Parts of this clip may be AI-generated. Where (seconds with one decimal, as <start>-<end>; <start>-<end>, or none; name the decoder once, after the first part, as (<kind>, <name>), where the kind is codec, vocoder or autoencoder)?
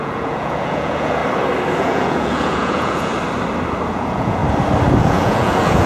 0.0-1.2 (vocoder, Vocos); 1.8-3.1; 3.9-4.4; 5.0-5.9